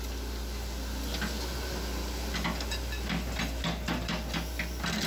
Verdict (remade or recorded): recorded